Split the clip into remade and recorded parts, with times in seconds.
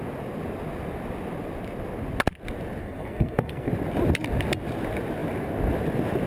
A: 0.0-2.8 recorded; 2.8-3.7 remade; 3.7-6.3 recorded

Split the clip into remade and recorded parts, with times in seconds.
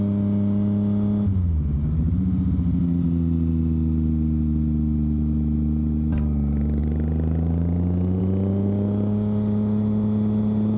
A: 0.0-10.8 recorded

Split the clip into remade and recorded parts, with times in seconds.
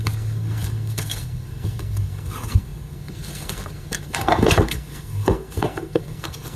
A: 0.0-6.6 remade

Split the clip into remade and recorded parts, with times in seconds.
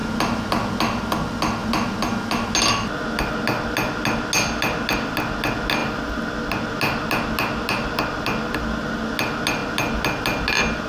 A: 0.0-10.9 recorded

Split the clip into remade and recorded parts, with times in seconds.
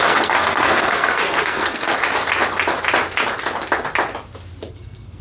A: 0.0-1.9 remade; 1.9-4.7 recorded; 4.7-5.2 remade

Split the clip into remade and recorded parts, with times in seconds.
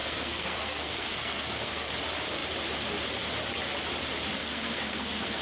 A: 0.0-1.9 remade; 1.9-4.4 recorded; 4.4-5.4 remade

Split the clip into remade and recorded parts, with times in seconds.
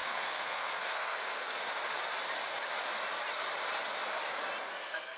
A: 0.0-1.6 remade; 1.6-4.7 recorded; 4.7-5.2 remade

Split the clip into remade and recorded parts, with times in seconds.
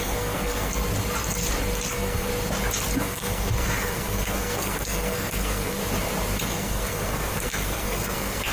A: 0.0-0.7 remade; 0.7-1.9 recorded; 1.9-2.3 remade; 2.3-3.0 recorded; 3.0-5.8 remade; 5.8-6.4 recorded; 6.4-8.5 remade